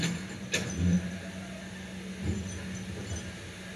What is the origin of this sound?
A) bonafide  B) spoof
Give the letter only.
A